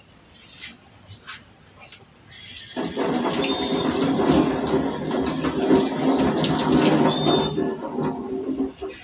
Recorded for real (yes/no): yes